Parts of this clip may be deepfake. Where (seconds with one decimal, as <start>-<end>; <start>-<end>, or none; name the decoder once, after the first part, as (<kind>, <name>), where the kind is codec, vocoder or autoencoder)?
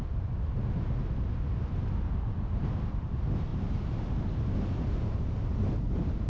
3.5-6.3 (vocoder, BigVGAN v2)